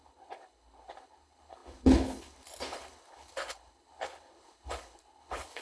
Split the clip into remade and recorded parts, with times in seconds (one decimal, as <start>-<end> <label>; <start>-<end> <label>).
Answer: 0.0-5.6 remade